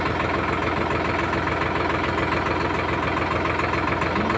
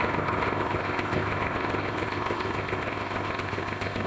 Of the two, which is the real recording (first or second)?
first